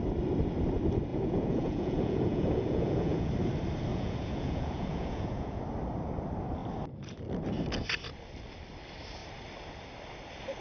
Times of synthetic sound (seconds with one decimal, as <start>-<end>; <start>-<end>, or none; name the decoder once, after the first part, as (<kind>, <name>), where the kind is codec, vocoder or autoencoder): 1.1-3.3 (vocoder, Vocos); 3.9-5.6